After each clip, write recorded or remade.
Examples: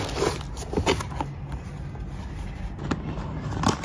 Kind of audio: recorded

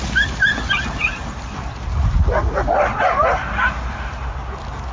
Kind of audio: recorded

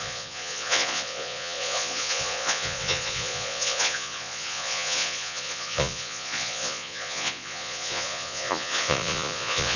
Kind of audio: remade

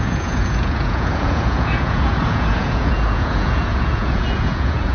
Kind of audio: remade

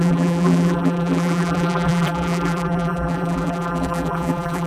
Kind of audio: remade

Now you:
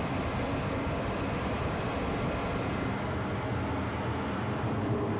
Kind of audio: recorded